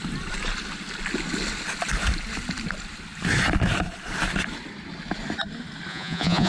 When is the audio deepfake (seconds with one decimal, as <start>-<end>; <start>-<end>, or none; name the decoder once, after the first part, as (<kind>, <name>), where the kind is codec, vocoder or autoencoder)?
5.9-6.5 (vocoder, Vocos)